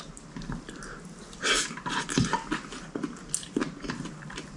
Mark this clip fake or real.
real